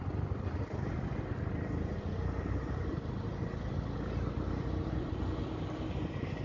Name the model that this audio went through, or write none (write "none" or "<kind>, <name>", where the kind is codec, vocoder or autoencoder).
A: none